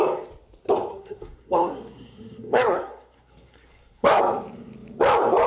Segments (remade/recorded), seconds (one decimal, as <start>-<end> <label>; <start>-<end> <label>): 0.0-0.9 recorded; 0.9-4.2 remade; 4.2-5.5 recorded